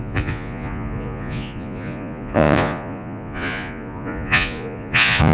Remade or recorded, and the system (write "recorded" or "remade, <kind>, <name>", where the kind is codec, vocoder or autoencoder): remade, vocoder, Vocos